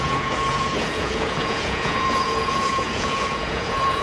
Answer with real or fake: fake